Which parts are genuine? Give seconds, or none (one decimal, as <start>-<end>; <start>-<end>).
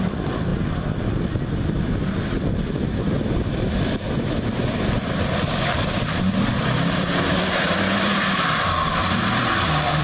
0.5-3.1